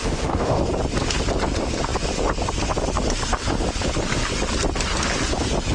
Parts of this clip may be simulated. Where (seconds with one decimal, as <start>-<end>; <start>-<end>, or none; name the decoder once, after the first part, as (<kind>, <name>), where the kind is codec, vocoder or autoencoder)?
0.0-0.6 (autoencoder, DAC-VAE)

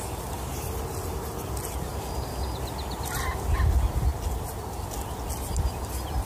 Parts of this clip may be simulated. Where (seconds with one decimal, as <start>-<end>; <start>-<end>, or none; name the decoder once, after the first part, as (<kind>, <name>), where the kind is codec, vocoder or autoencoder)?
none

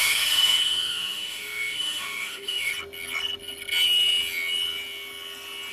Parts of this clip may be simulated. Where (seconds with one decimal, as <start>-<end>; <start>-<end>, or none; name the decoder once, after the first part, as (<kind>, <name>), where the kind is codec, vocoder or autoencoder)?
0.0-2.7 (autoencoder, DAC-VAE)

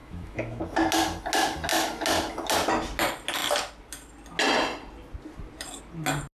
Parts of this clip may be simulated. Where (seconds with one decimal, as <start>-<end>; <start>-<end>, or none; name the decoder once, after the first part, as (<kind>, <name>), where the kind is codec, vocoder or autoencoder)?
0.0-0.6 (autoencoder, DAC-VAE)

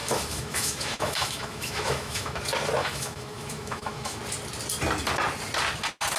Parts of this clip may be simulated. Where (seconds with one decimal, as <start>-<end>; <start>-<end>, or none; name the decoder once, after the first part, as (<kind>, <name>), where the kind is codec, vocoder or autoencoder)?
0.0-2.4 (autoencoder, DAC-VAE); 2.8-4.2

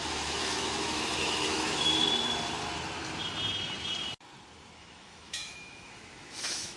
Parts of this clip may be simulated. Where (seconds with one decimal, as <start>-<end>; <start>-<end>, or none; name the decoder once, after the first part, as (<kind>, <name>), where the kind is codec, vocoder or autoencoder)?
0.0-1.9 (autoencoder, DAC-VAE); 4.8-6.8